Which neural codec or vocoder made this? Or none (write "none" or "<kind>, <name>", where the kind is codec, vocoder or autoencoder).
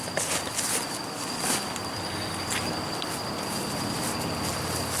none